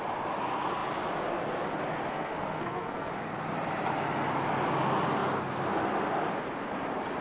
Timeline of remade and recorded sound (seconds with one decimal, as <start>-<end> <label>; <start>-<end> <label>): 0.0-2.1 recorded; 2.1-3.1 remade; 3.1-7.2 recorded